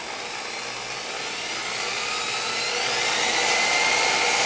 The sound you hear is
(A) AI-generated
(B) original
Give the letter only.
B